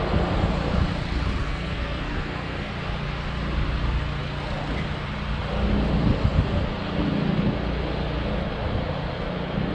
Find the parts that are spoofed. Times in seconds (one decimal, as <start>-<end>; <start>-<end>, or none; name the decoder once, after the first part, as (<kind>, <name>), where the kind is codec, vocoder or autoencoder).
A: 1.4-2.7 (codec, SNAC)